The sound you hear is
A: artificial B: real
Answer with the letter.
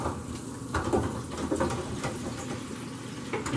B